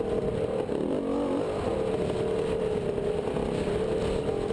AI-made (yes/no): no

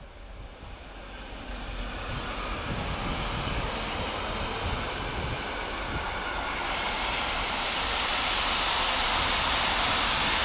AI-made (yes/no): no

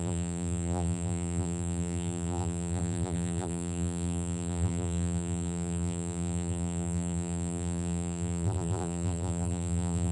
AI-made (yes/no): yes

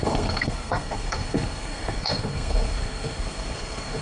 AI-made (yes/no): yes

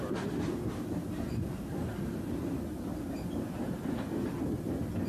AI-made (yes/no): no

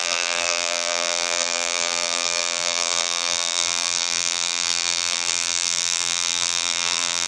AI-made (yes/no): yes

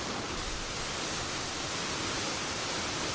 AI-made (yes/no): no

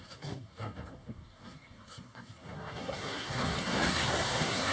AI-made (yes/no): yes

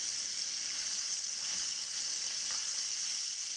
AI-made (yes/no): no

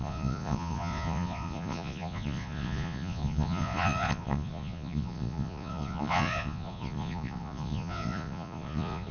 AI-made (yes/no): yes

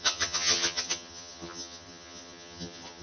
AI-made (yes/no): yes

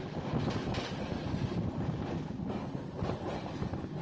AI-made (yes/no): no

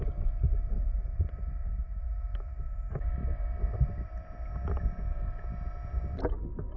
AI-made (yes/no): no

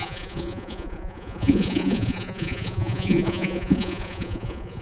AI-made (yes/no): yes